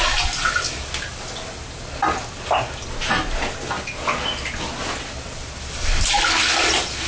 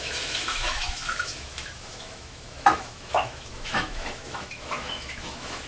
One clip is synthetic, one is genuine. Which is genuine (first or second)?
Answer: first